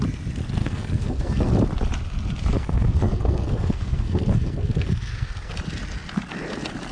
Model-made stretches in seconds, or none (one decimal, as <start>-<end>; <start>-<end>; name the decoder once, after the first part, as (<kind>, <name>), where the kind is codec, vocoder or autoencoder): 0.6-1.5 (codec, SNAC); 2.5-5.5